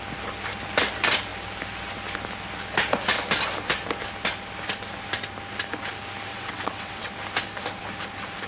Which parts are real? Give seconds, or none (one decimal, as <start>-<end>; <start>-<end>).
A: 0.0-6.3; 7.1-8.5